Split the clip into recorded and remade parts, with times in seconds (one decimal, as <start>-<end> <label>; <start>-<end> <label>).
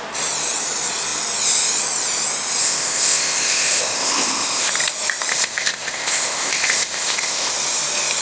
0.0-2.6 recorded; 2.6-4.7 remade; 4.7-5.3 recorded; 5.3-7.5 remade; 7.5-8.2 recorded